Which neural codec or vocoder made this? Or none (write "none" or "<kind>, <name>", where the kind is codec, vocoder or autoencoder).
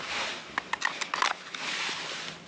none